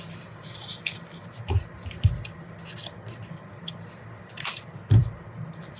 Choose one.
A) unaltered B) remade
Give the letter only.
A